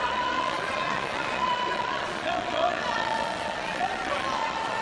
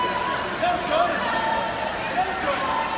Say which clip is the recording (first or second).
second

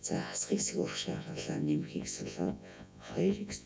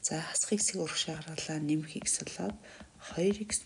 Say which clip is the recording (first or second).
second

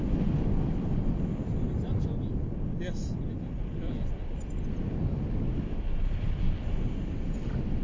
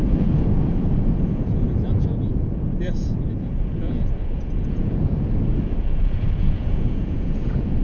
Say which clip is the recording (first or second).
first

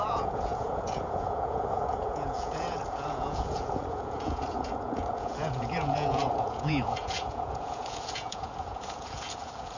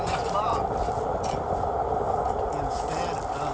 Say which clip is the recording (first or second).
second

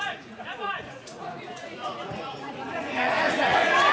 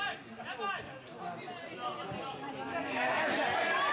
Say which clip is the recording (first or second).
second